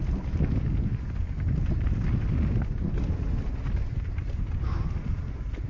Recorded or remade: recorded